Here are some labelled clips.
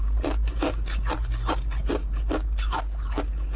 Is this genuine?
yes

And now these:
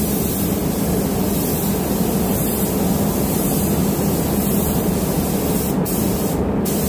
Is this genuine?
yes